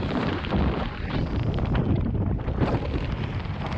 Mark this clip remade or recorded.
remade